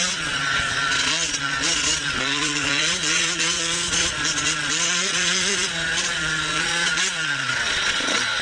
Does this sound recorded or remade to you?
remade